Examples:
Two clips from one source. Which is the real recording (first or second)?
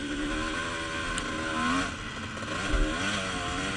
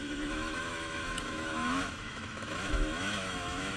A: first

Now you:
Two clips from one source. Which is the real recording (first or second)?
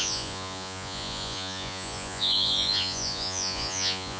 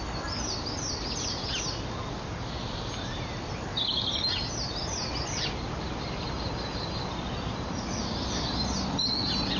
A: second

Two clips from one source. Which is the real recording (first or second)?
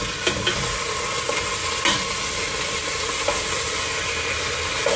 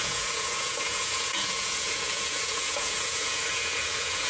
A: first